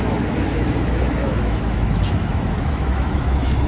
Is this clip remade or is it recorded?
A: remade